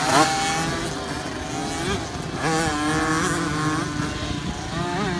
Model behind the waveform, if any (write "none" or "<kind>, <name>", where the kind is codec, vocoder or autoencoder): none